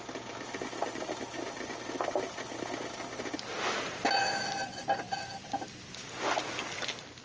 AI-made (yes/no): no